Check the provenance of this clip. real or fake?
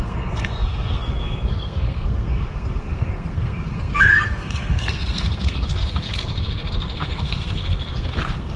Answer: fake